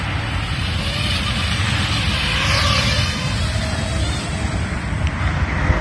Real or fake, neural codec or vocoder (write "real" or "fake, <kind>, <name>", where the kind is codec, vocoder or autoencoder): real